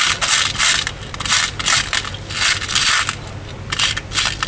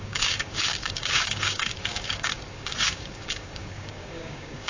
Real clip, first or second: first